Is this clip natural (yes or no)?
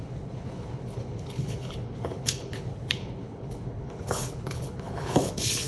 no